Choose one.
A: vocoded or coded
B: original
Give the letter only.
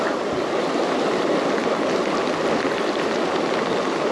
B